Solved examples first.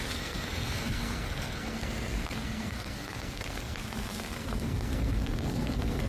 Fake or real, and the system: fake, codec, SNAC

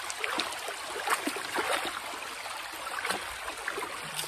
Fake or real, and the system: real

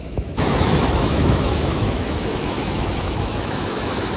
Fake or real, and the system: fake, autoencoder, DAC-VAE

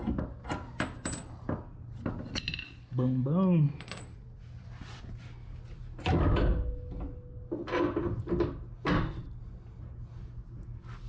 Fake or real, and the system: real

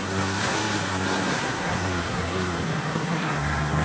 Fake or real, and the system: fake, codec, SNAC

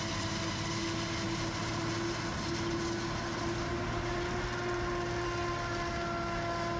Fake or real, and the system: real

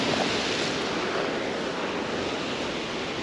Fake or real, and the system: real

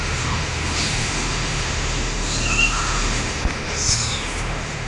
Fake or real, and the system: fake, autoencoder, DAC-VAE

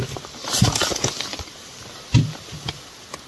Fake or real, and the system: real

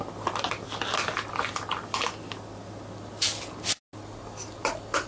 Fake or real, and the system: real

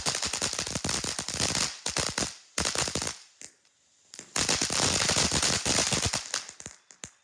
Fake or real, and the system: real